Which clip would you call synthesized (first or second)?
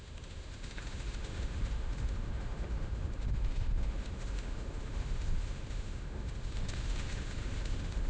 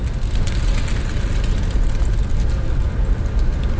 first